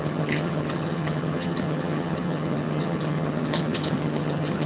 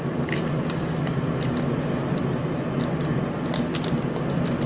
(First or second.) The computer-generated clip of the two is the first